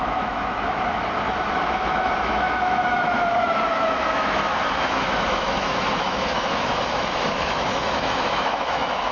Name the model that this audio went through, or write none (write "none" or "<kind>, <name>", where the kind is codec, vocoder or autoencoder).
autoencoder, DAC-VAE